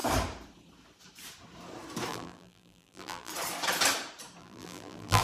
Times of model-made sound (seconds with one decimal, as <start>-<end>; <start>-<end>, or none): 2.1-3.3; 4.4-5.2